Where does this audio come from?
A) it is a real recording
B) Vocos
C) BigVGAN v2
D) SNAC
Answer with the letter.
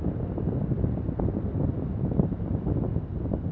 A